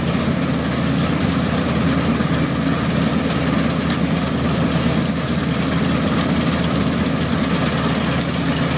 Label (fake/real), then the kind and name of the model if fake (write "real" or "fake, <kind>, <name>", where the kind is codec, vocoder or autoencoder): real